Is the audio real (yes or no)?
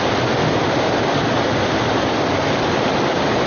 yes